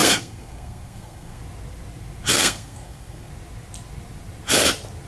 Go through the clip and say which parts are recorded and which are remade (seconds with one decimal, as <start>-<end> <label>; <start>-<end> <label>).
0.0-1.4 remade; 1.4-2.3 recorded; 2.3-3.3 remade; 3.3-5.1 recorded